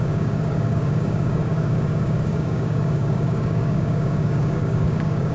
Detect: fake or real fake